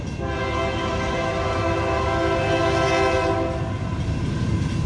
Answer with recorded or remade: recorded